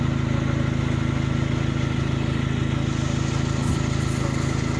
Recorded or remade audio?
recorded